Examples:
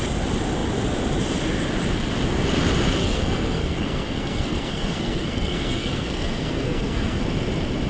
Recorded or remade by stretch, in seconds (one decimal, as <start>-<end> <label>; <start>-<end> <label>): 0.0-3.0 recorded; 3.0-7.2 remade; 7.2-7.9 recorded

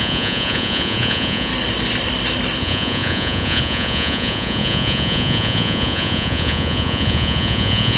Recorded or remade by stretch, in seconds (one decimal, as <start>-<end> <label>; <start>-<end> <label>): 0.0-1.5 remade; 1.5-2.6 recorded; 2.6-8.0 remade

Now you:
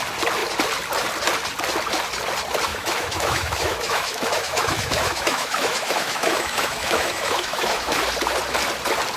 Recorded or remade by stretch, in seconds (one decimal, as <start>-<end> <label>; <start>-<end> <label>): 0.0-2.7 recorded; 2.7-8.0 remade; 8.0-9.2 recorded

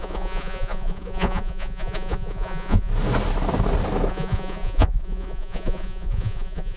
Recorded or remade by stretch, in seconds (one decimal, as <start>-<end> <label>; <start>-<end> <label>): 0.0-2.9 remade; 2.9-4.1 recorded; 4.1-6.8 remade

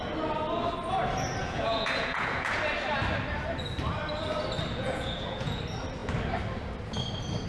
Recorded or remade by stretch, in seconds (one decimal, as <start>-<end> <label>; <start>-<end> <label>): 0.0-1.4 recorded; 1.4-2.6 remade; 2.6-4.7 recorded; 4.7-5.6 remade; 5.6-7.5 recorded

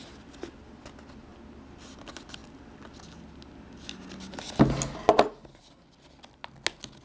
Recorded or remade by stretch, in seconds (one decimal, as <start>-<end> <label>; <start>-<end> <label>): 0.0-7.0 recorded

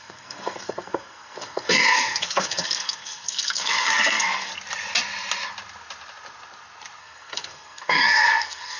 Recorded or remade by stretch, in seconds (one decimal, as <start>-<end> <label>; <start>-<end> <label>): 0.0-4.5 remade; 4.5-7.0 recorded; 7.0-8.8 remade

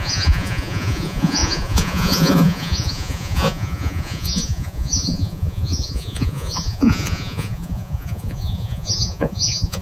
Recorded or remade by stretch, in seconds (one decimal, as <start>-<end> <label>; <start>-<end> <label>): 0.0-9.8 remade